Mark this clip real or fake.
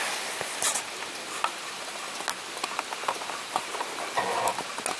real